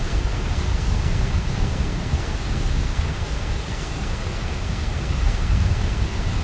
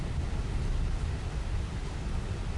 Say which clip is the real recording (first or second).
second